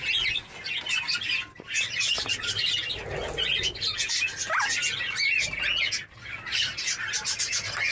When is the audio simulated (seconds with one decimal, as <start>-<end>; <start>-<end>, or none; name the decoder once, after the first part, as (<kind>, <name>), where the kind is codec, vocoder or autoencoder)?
none